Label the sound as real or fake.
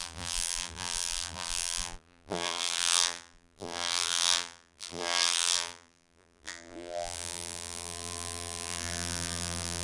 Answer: fake